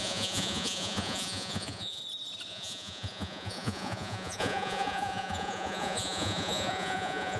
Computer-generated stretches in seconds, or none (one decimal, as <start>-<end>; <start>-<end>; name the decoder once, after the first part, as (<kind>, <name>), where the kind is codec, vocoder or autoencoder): 0.0-2.0 (vocoder, Vocos); 2.5-7.4